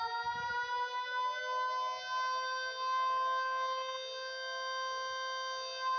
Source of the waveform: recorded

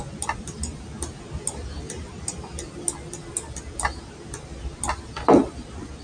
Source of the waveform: recorded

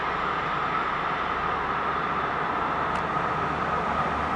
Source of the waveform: recorded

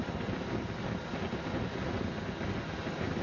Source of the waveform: recorded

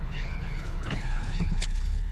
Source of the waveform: remade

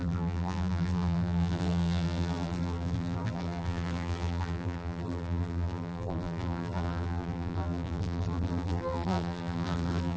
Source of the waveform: remade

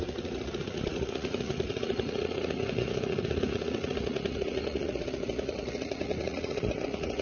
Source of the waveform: remade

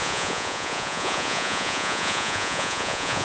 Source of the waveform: remade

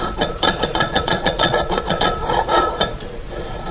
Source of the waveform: remade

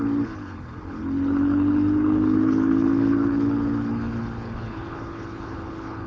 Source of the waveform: remade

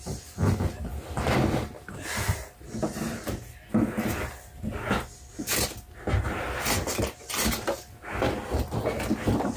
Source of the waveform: recorded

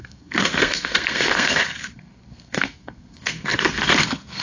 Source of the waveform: remade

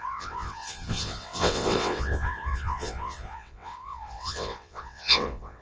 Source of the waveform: remade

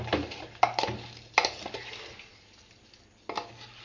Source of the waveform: recorded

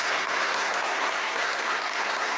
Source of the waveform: remade